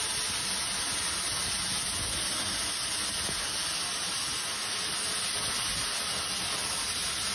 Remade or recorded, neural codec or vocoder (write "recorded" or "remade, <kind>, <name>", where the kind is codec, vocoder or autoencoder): recorded